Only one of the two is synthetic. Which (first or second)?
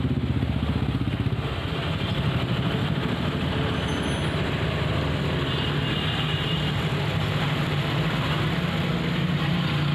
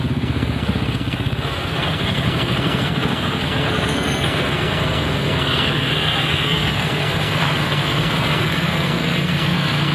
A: second